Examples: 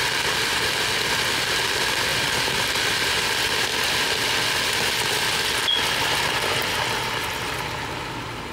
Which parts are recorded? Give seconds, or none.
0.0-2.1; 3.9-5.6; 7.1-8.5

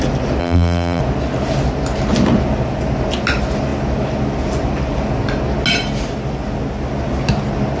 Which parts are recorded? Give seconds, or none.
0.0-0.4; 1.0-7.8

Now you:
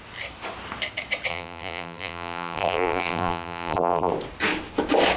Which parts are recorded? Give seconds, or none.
0.0-1.3; 4.1-5.2

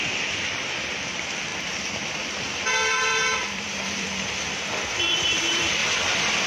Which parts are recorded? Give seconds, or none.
1.5-2.6; 5.8-6.5

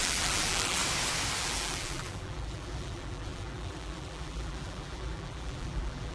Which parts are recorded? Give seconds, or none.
0.8-1.4

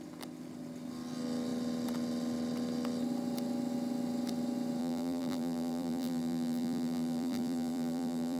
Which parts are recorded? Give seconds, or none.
0.0-4.8

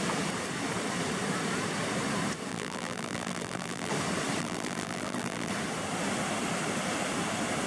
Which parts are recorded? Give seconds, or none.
0.0-2.5; 3.9-4.4; 5.5-7.7

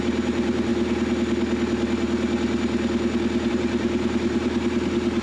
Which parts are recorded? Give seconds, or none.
0.7-3.5